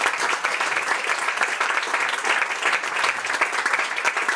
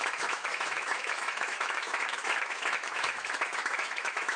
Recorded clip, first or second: first